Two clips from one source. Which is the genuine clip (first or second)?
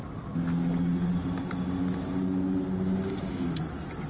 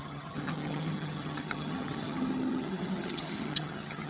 first